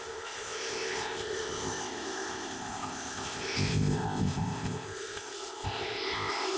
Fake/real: fake